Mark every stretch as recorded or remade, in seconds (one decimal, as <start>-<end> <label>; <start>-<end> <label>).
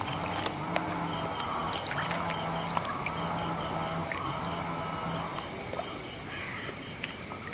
0.0-1.6 remade; 1.6-2.9 recorded; 2.9-7.5 remade